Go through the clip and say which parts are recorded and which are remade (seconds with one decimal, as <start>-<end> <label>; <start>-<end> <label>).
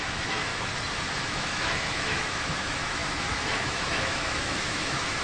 0.0-0.5 remade; 0.5-1.1 recorded; 1.1-5.2 remade